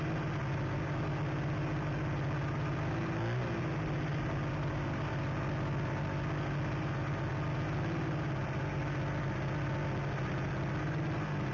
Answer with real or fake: real